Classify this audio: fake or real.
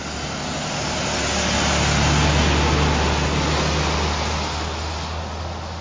real